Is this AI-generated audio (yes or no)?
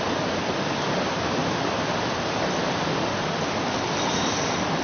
no